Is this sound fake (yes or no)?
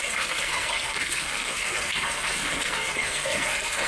yes